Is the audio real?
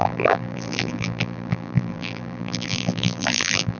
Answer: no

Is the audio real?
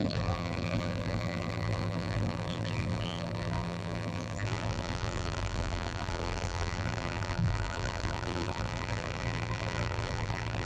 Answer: no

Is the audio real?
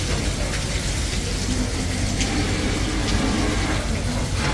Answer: yes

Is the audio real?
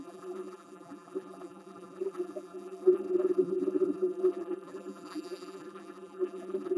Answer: no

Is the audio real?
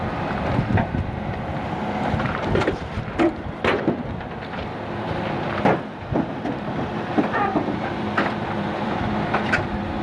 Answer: no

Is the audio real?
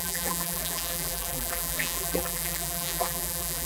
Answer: no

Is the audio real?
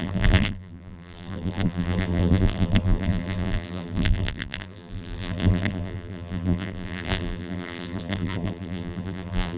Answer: no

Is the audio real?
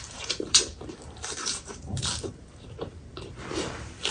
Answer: no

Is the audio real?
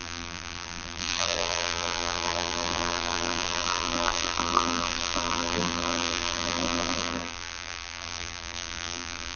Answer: no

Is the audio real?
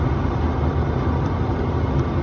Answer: yes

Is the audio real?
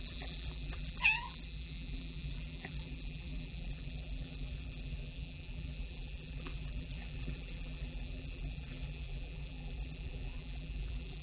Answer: no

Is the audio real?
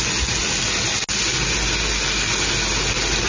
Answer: yes